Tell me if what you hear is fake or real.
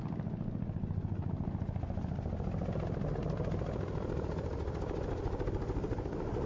real